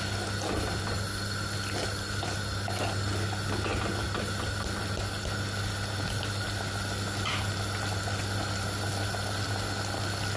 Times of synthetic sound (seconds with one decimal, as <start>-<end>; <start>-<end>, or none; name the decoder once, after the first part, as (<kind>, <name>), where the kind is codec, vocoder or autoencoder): none